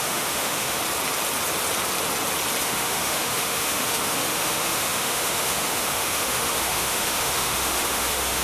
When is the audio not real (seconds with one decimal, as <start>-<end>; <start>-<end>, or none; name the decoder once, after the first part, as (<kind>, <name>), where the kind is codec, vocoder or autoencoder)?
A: 0.0-0.8 (autoencoder, DAC-VAE); 2.6-8.4